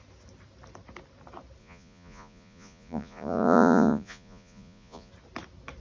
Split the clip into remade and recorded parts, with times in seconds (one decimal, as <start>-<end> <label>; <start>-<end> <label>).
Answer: 0.0-1.6 recorded; 1.6-5.1 remade; 5.1-5.8 recorded